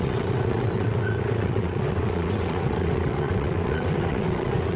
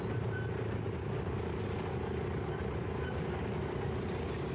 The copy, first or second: first